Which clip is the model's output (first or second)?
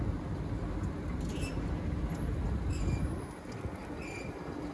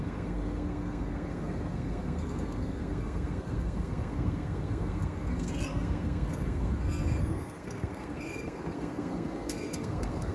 second